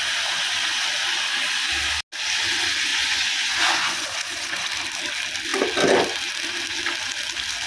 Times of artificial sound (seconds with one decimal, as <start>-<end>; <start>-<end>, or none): 2.9-4.7